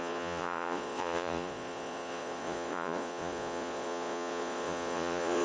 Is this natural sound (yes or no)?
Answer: no